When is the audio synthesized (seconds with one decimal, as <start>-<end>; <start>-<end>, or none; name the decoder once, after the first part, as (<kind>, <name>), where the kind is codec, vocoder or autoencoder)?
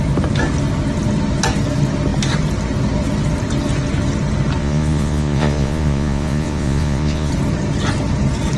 4.6-7.3 (vocoder, Vocos)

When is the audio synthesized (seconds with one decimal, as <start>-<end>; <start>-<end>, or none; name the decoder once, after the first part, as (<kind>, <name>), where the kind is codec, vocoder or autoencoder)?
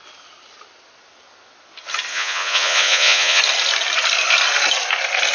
2.1-3.4 (vocoder, Vocos)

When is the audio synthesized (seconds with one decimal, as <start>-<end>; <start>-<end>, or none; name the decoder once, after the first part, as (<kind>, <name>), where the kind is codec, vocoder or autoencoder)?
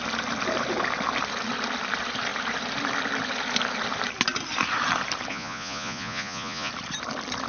5.3-6.7 (vocoder, Vocos)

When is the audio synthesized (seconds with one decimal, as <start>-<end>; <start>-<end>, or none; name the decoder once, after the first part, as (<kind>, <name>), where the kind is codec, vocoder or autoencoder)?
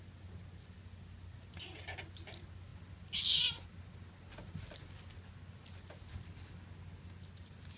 none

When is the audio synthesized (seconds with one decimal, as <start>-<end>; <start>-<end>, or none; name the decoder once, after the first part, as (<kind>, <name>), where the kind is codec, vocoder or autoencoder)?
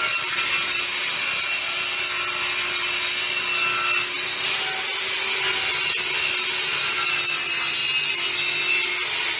none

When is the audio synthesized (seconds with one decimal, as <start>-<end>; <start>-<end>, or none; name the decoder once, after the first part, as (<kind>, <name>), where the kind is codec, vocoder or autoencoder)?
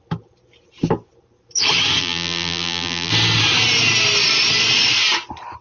2.0-3.1 (vocoder, BigVGAN v2)